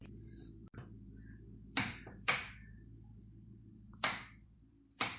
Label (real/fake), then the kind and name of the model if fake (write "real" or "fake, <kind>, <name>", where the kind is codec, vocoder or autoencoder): fake, vocoder, BigVGAN v2